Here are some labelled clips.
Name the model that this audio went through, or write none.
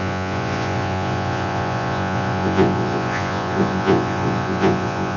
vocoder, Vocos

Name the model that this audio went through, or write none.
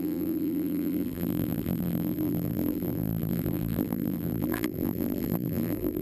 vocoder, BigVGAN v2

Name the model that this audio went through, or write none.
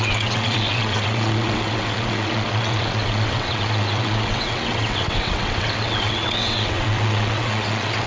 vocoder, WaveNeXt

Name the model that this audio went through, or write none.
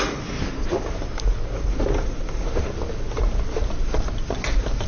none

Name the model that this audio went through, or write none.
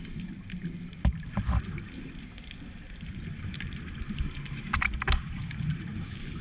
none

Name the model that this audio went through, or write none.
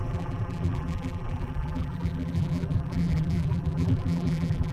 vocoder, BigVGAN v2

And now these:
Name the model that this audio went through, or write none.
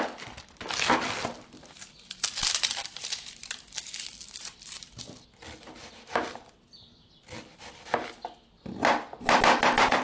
none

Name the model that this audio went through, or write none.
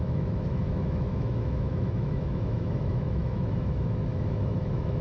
autoencoder, DAC-VAE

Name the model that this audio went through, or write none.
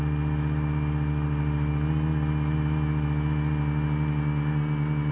none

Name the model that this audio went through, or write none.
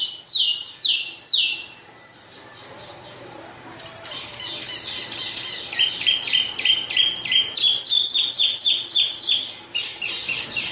vocoder, BigVGAN v2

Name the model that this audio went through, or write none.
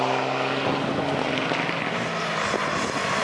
none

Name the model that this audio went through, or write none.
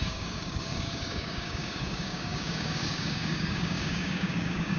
codec, DAC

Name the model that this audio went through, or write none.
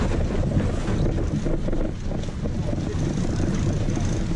none